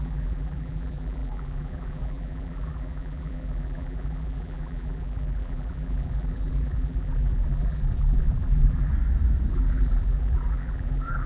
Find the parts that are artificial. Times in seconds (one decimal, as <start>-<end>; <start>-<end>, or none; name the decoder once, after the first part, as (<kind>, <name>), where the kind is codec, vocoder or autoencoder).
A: 0.0-8.9 (vocoder, BigVGAN v2); 9.5-11.3